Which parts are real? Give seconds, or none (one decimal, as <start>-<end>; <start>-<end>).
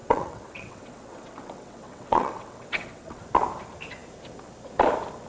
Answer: 3.2-5.3